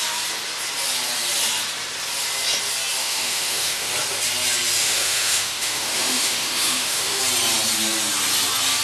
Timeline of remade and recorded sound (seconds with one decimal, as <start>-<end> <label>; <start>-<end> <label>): 0.0-3.0 recorded; 3.0-3.9 remade; 3.9-4.8 recorded; 4.8-7.2 remade; 7.2-8.8 recorded